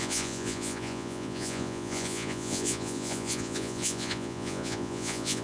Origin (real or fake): fake